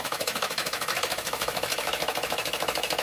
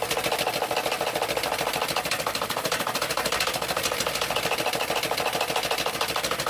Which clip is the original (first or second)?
second